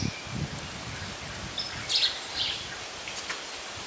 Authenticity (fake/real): real